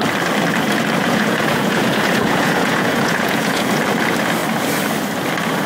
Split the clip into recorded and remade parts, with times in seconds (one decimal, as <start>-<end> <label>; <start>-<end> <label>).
0.0-1.0 recorded; 1.0-3.7 remade; 3.7-5.7 recorded